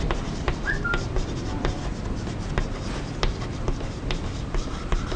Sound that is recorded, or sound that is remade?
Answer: remade